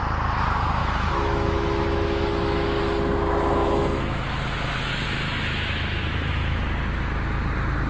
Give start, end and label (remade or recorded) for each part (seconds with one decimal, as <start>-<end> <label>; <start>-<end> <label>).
0.0-0.8 recorded; 0.8-2.8 remade; 2.8-3.6 recorded; 3.6-6.6 remade; 6.6-7.9 recorded